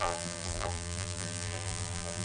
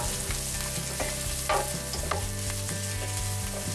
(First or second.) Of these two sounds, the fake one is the first